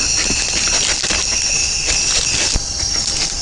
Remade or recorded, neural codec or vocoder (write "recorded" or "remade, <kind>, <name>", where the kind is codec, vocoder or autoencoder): recorded